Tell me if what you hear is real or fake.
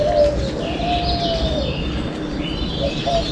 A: real